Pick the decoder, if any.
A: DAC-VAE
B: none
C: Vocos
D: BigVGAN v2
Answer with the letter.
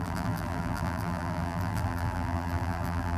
D